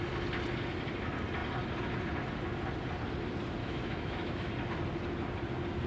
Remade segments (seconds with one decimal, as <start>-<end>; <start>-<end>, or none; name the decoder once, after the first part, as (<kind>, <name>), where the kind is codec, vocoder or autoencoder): 3.6-4.5 (autoencoder, DAC-VAE)